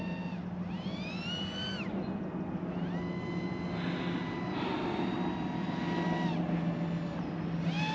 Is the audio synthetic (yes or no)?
no